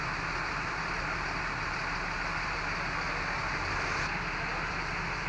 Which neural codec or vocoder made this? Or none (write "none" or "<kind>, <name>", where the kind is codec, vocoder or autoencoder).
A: none